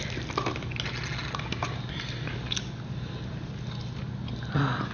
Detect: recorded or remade recorded